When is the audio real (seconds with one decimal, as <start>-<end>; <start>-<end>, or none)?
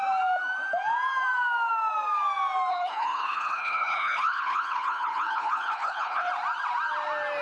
0.0-2.7; 6.3-7.4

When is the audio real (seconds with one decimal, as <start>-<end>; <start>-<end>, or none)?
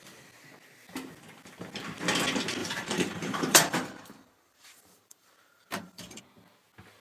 0.0-2.6; 6.2-7.0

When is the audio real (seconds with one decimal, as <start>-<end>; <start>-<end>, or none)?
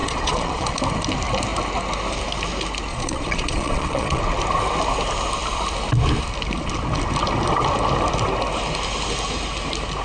0.8-2.9; 4.2-10.0